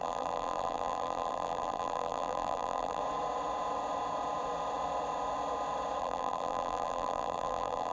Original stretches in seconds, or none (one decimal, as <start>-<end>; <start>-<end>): 3.0-6.0